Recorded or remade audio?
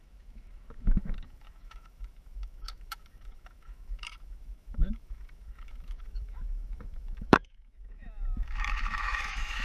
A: remade